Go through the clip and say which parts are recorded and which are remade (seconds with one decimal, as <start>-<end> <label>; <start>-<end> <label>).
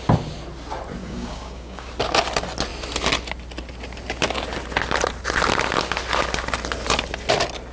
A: 0.0-1.0 recorded; 1.0-1.9 remade; 1.9-7.7 recorded